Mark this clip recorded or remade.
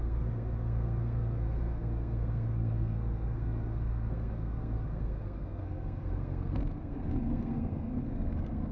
remade